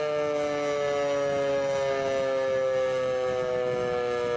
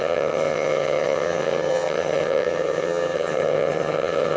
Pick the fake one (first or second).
second